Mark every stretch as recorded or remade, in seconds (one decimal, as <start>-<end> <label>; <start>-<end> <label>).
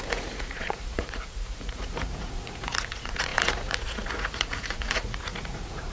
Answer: 0.0-5.9 remade